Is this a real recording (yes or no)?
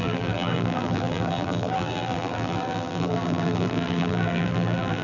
no